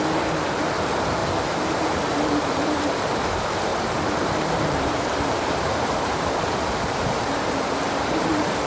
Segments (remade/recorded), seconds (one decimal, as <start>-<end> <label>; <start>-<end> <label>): 0.0-1.2 recorded; 1.2-3.0 remade; 3.0-3.7 recorded; 3.7-8.7 remade